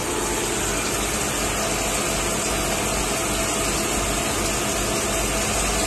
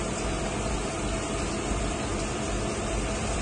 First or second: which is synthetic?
second